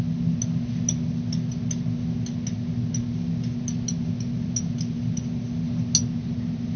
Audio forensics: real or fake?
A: real